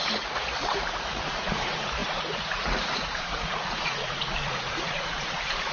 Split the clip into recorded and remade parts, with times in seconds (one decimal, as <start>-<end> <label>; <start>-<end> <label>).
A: 0.0-5.7 remade

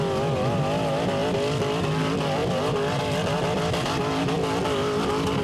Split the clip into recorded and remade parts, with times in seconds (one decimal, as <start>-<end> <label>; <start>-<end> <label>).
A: 0.0-5.4 recorded

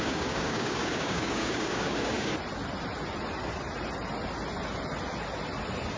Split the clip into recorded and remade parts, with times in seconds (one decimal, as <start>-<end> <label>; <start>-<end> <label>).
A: 0.0-2.3 remade; 2.3-6.0 recorded

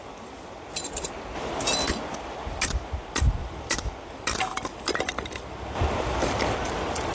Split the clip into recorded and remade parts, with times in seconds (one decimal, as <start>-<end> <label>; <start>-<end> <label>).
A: 0.0-3.4 recorded; 3.4-3.9 remade; 3.9-4.5 recorded; 4.5-5.4 remade; 5.4-7.1 recorded

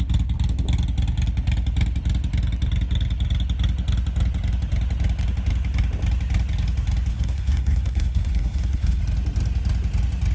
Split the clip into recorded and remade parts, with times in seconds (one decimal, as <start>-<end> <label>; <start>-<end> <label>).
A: 0.0-7.1 recorded; 7.1-9.0 remade; 9.0-10.3 recorded

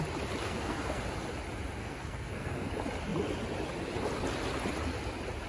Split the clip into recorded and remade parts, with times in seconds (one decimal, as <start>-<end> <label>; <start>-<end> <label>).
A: 0.0-0.4 recorded; 0.4-1.0 remade; 1.0-1.8 recorded; 1.8-2.7 remade; 2.7-5.5 recorded

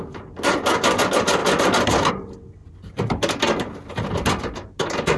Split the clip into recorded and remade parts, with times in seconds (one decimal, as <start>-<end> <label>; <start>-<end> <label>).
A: 0.0-5.2 recorded